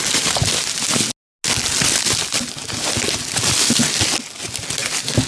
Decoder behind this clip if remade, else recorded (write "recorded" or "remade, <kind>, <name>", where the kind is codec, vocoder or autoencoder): recorded